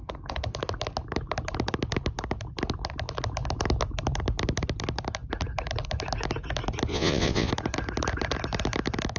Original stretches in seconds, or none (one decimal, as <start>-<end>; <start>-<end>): 0.0-6.9; 7.5-9.2